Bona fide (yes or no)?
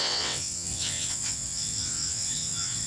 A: no